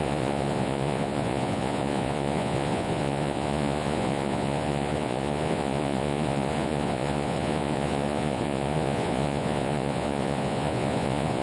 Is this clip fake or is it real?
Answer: fake